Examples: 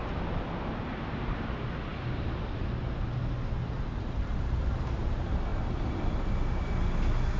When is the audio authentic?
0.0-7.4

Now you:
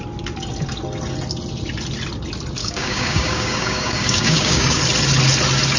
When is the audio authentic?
0.0-2.6; 4.8-5.8

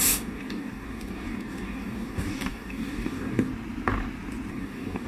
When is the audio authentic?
3.5-4.5

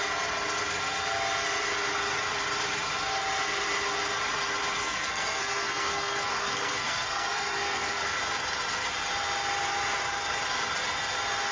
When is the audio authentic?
0.0-4.8; 8.2-11.5

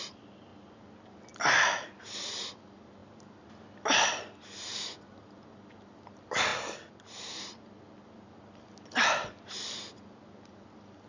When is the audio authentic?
0.0-11.1

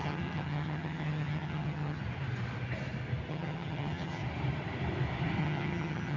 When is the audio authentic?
2.0-3.3; 4.2-5.4

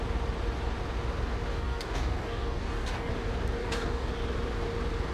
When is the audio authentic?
0.0-1.5; 3.1-3.6; 4.1-5.1

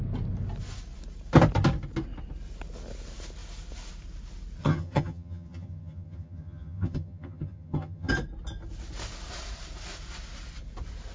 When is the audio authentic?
0.0-4.6; 8.1-11.1